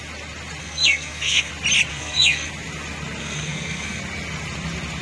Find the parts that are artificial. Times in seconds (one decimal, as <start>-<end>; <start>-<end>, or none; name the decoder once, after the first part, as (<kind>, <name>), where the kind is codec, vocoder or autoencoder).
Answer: 0.6-1.5 (codec, SNAC); 1.9-2.5; 3.2-4.0